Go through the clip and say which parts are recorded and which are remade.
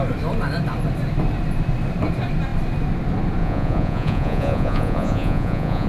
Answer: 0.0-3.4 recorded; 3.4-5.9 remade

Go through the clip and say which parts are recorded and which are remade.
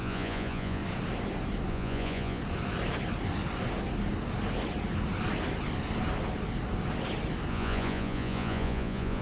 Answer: 0.0-0.8 remade; 0.8-1.7 recorded; 1.7-2.4 remade; 2.4-7.5 recorded; 7.5-9.2 remade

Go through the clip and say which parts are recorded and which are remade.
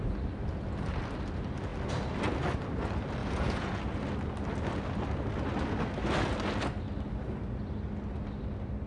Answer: 0.0-3.2 recorded; 3.2-3.8 remade; 3.8-8.9 recorded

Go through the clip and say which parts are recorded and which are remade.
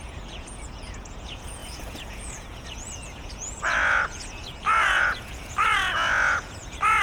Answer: 0.0-7.0 remade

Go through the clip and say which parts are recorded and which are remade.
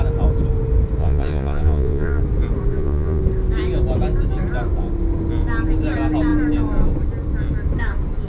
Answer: 0.0-1.0 recorded; 1.0-2.2 remade; 2.2-2.7 recorded; 2.7-3.2 remade; 3.2-8.3 recorded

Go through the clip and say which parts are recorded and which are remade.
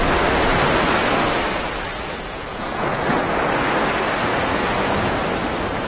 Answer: 0.0-1.9 recorded; 1.9-3.3 remade; 3.3-4.3 recorded; 4.3-5.1 remade; 5.1-5.9 recorded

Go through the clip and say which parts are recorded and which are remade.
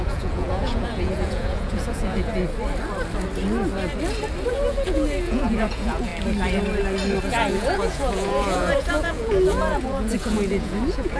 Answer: 0.0-2.3 remade; 2.3-4.5 recorded; 4.5-6.1 remade; 6.1-7.2 recorded; 7.2-11.2 remade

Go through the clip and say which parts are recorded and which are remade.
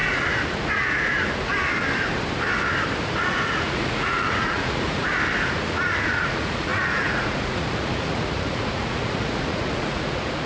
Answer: 0.0-1.5 remade; 1.5-3.2 recorded; 3.2-5.0 remade; 5.0-5.5 recorded; 5.5-10.5 remade